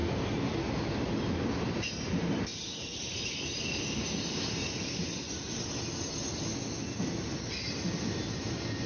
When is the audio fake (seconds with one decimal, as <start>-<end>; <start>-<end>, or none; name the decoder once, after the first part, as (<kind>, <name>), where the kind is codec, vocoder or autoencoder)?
2.5-3.6 (vocoder, BigVGAN v2)